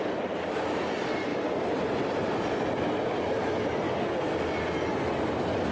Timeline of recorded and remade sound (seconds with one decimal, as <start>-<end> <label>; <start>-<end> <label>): 0.0-5.7 recorded